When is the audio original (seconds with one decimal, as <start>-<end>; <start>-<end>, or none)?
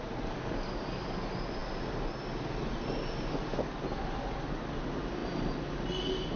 0.0-6.4